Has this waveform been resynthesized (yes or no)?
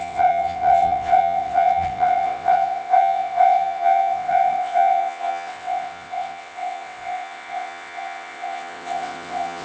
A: yes